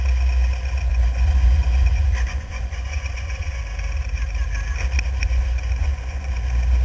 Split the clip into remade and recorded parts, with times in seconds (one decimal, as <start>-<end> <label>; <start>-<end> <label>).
0.0-0.9 recorded; 0.9-3.6 remade; 3.6-5.2 recorded; 5.2-6.3 remade; 6.3-6.8 recorded